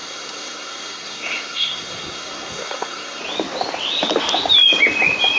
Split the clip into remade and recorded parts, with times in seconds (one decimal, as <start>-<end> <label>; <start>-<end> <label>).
0.0-3.2 remade; 3.2-5.4 recorded